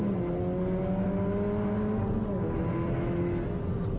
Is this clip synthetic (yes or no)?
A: no